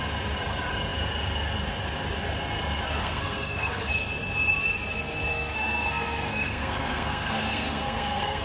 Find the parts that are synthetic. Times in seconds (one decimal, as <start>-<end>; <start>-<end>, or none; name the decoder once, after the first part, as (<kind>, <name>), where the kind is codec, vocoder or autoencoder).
3.0-3.9 (codec, SNAC); 5.3-8.4